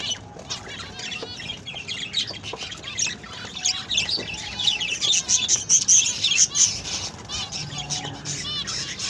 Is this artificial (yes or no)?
no